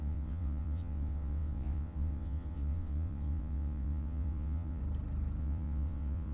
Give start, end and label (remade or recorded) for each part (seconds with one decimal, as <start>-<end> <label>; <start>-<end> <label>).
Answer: 0.0-4.8 remade; 4.8-5.4 recorded; 5.4-6.3 remade